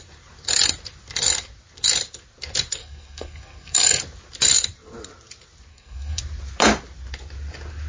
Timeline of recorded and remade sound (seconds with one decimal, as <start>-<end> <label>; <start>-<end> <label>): 0.0-2.8 recorded; 2.8-4.0 remade; 4.0-5.7 recorded; 5.7-6.2 remade; 6.2-7.9 recorded